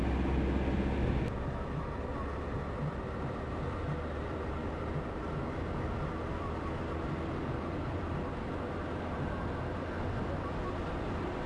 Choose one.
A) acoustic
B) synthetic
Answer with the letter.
A